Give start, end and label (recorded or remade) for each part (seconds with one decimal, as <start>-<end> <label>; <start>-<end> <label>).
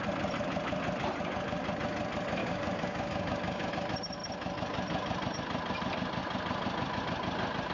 0.0-2.4 recorded; 2.4-3.7 remade; 3.7-7.7 recorded